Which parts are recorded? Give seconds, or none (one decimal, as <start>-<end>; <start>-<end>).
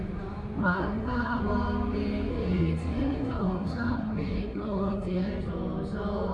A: 0.0-0.6; 1.4-2.3; 5.3-6.3